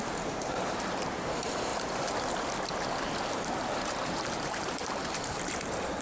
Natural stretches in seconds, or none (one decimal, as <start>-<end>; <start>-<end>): 1.7-3.3